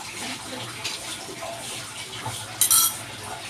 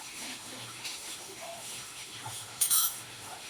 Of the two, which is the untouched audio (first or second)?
first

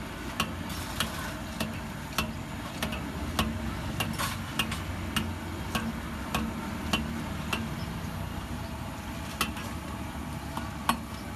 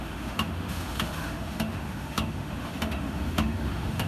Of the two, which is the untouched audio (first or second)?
first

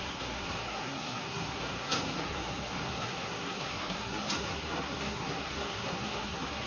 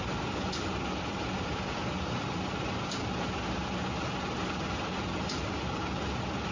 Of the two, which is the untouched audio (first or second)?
second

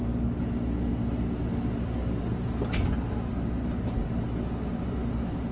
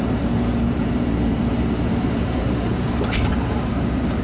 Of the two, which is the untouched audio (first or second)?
first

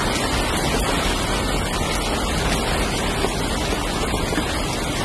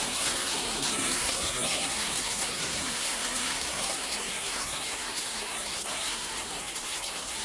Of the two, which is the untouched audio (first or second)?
first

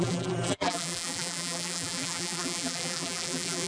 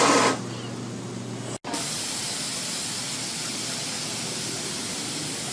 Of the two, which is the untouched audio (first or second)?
second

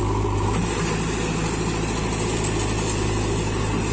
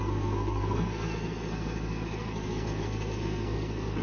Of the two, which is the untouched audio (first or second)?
first